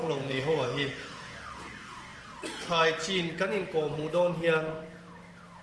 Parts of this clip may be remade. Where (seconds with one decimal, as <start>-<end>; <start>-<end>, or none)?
0.0-2.1